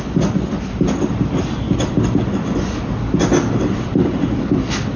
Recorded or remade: recorded